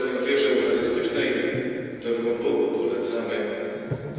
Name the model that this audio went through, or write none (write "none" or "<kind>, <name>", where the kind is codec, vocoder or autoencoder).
none